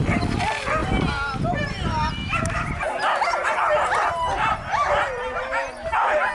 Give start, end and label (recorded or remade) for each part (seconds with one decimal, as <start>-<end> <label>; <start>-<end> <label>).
0.0-0.8 recorded; 0.8-4.1 remade; 4.1-4.8 recorded; 4.8-5.4 remade; 5.4-6.3 recorded